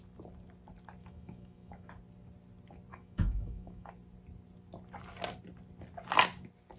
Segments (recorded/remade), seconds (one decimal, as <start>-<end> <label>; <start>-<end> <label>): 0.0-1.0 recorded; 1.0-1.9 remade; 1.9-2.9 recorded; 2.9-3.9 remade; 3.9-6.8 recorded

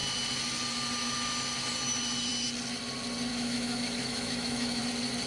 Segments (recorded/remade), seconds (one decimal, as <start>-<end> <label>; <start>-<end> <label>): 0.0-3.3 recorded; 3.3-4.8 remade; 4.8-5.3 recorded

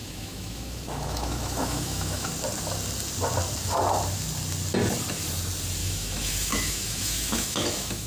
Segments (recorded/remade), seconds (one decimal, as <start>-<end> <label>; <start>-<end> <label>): 0.0-2.3 remade; 2.3-5.8 recorded; 5.8-8.1 remade

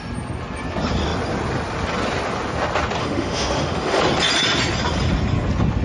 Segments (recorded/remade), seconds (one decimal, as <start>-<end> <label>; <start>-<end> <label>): 0.0-3.0 recorded; 3.0-4.0 remade; 4.0-5.8 recorded

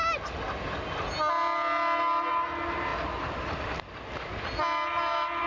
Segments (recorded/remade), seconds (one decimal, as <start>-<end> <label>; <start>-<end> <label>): 0.0-5.5 recorded